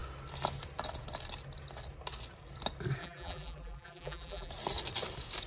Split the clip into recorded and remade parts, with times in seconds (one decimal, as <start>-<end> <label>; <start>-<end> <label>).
0.0-3.0 recorded; 3.0-4.5 remade; 4.5-5.5 recorded